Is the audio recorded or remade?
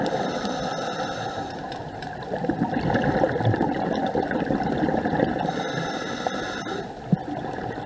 recorded